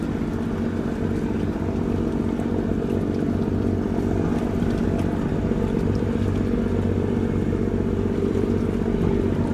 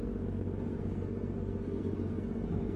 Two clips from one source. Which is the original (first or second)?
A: first